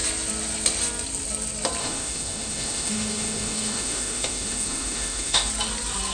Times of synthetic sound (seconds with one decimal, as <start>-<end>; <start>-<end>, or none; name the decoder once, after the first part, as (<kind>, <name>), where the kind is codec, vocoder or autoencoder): 1.8-5.5 (autoencoder, DAC-VAE)